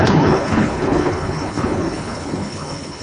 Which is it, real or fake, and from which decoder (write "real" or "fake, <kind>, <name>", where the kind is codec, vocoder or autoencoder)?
fake, codec, HILCodec